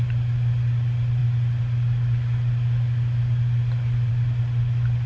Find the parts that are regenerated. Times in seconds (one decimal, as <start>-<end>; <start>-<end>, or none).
none